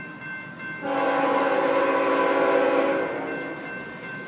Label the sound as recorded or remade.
recorded